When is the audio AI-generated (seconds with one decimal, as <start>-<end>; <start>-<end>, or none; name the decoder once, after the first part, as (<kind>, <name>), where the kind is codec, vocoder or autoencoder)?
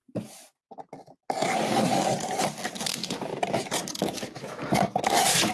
2.9-3.3 (codec, DAC); 3.9-5.5